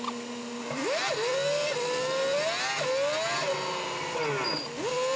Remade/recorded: recorded